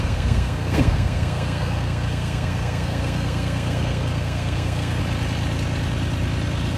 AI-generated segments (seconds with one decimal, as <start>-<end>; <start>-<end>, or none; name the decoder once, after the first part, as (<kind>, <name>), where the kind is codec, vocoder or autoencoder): 0.0-5.0 (codec, SNAC)